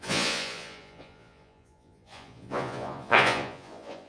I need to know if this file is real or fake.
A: fake